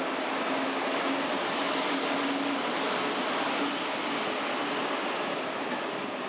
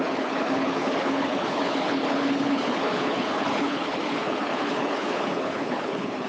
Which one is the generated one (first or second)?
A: second